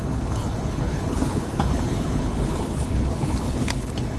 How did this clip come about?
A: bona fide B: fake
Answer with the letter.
B